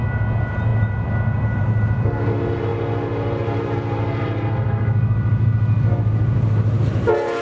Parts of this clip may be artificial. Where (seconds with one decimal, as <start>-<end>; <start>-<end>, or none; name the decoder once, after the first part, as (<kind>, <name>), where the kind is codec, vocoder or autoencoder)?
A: none